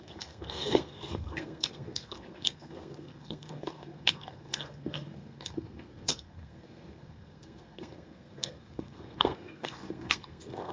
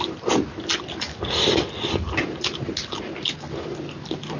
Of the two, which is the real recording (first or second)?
second